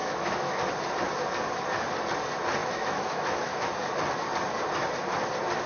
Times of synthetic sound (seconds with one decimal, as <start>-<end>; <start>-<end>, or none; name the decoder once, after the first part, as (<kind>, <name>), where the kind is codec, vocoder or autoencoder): 0.0-0.6 (autoencoder, DAC-VAE); 2.6-3.7